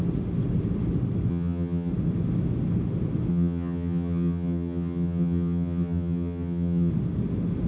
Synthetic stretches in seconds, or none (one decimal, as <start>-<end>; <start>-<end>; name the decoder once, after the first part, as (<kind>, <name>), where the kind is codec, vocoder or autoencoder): 1.3-1.9 (vocoder, HiFi-GAN); 3.3-6.9